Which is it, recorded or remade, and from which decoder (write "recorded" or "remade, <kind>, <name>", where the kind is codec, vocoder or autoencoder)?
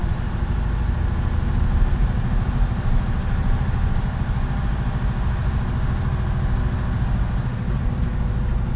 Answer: recorded